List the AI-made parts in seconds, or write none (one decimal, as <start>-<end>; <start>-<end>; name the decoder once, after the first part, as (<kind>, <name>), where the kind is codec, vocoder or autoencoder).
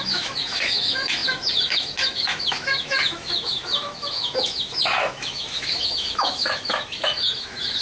0.0-7.8 (autoencoder, DAC-VAE)